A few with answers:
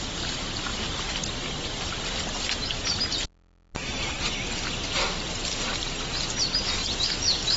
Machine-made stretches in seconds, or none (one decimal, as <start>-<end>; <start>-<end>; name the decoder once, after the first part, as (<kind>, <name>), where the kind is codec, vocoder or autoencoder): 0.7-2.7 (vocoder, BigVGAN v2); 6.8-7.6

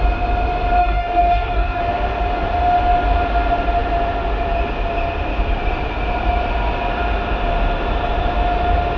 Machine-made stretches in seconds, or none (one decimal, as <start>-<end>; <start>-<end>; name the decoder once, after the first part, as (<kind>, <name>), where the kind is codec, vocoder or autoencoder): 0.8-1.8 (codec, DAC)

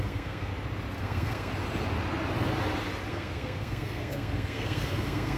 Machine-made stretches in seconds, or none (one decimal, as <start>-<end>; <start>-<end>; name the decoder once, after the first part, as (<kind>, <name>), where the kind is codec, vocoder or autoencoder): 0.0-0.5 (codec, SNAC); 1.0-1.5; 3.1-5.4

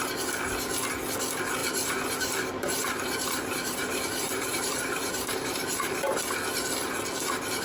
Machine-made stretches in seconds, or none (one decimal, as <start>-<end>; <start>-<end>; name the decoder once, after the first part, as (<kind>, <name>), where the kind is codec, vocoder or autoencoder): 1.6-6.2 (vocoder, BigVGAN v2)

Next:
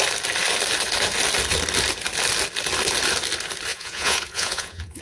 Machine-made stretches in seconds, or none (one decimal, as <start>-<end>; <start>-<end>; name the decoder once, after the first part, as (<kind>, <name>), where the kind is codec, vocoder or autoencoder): 3.7-5.0 (vocoder, Vocos)